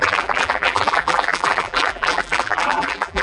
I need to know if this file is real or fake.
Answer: fake